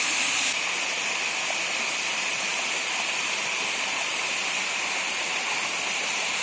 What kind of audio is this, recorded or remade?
recorded